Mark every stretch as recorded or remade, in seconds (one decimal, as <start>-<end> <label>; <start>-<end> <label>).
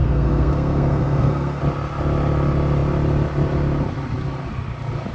0.0-1.6 remade; 1.6-5.1 recorded